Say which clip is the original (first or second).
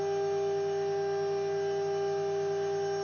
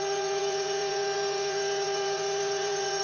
first